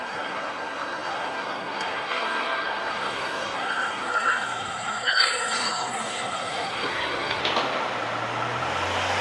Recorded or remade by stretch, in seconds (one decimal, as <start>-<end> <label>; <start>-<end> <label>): 0.0-7.4 remade; 7.4-9.2 recorded